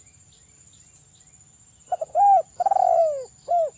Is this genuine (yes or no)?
yes